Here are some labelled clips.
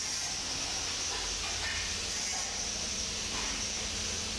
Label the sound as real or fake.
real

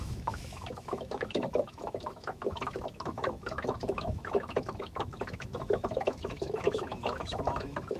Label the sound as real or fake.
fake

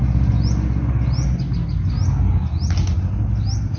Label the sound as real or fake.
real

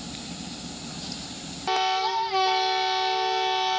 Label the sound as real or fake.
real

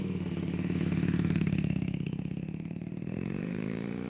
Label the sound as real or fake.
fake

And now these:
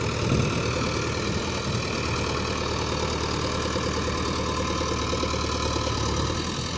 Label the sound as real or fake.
real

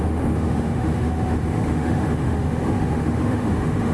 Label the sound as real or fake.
fake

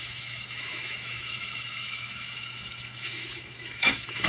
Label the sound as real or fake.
fake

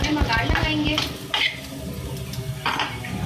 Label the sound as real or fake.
real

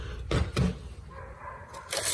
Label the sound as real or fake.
real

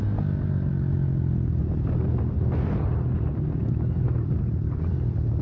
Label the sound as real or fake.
real